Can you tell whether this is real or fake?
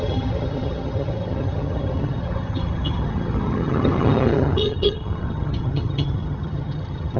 fake